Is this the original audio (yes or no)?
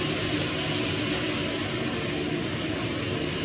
yes